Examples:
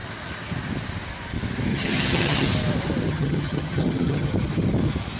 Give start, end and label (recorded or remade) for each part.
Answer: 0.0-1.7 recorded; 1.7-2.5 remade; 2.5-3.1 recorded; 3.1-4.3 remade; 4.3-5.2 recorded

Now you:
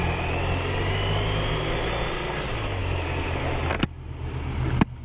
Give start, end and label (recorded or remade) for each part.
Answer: 0.0-5.0 recorded

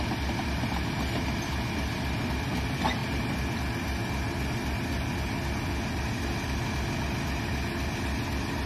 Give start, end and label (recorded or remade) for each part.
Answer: 0.0-8.7 recorded

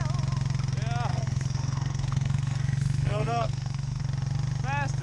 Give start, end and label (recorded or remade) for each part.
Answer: 0.0-1.1 recorded; 1.1-4.0 remade; 4.0-5.0 recorded

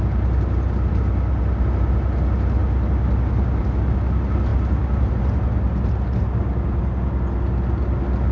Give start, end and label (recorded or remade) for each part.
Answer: 0.0-8.3 recorded

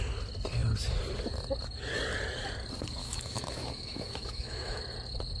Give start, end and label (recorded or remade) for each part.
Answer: 0.0-3.0 recorded; 3.0-4.8 remade; 4.8-5.4 recorded

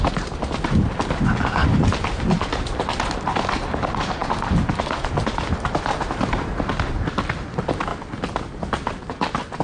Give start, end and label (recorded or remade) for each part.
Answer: 0.0-1.6 recorded; 1.6-3.5 remade; 3.5-9.6 recorded